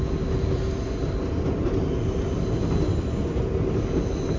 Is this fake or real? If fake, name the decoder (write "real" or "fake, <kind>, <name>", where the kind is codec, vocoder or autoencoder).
real